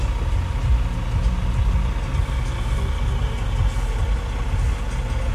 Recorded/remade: recorded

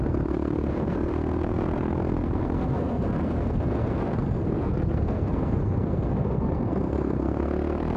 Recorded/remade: remade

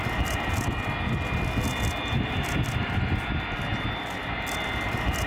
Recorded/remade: recorded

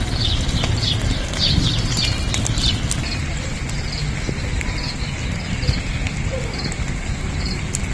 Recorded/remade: recorded